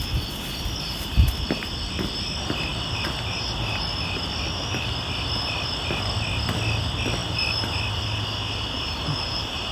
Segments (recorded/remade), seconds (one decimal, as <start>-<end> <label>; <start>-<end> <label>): 0.0-9.7 recorded